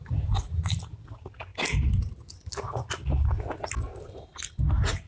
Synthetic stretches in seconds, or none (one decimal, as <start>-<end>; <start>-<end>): none